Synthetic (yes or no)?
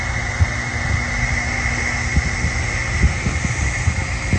no